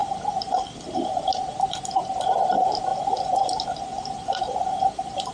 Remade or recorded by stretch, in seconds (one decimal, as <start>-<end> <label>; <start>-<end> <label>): 0.0-1.8 remade; 1.8-2.9 recorded; 2.9-5.3 remade